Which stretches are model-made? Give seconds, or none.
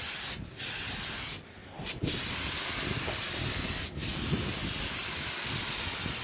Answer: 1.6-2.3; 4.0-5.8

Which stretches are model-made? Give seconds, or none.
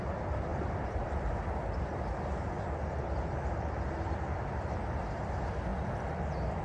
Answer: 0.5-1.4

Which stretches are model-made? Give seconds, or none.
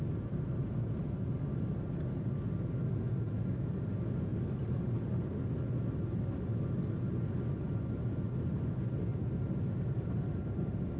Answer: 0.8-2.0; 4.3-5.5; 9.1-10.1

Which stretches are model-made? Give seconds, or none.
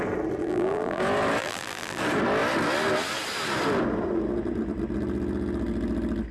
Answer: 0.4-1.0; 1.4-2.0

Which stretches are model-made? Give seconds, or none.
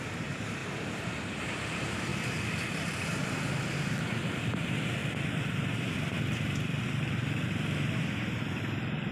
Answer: 0.0-0.6; 1.5-2.1; 4.4-5.0; 8.6-9.1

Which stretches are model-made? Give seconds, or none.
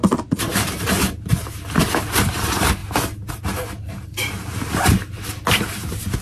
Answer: 0.0-2.8; 3.3-6.2